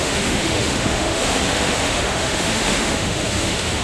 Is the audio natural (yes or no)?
no